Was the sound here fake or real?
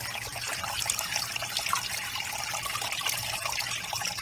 real